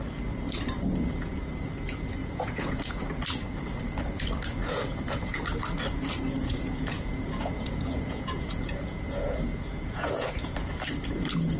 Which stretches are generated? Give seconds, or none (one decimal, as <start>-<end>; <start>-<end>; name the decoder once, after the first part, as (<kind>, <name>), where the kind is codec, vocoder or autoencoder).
2.2-2.8 (vocoder, Vocos); 4.6-5.3; 6.4-10.7